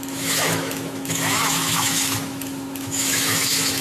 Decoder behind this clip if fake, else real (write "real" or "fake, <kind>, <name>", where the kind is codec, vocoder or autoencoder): fake, autoencoder, DAC-VAE